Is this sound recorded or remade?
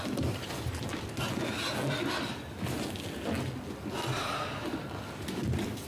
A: recorded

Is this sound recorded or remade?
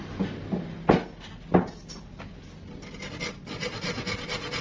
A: recorded